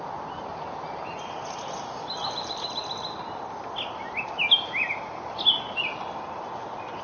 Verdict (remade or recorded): recorded